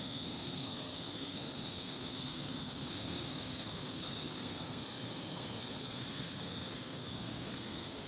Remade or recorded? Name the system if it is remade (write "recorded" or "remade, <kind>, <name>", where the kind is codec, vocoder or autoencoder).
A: remade, codec, SNAC